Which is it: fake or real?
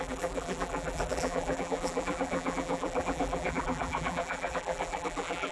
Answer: fake